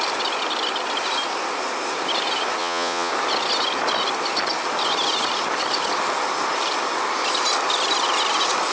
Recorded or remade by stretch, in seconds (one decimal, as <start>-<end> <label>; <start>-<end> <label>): 0.0-2.6 recorded; 2.6-3.1 remade; 3.1-8.7 recorded